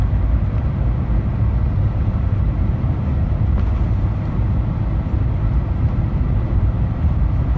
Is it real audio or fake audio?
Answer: real